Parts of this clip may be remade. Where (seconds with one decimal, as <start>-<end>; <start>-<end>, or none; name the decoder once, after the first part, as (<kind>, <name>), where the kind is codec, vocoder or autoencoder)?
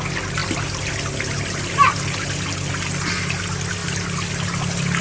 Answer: none